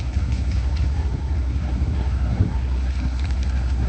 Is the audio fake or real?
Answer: fake